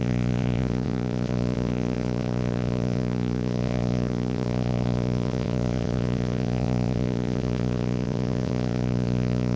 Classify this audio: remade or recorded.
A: remade